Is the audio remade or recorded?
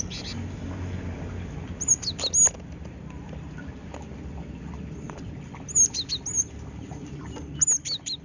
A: recorded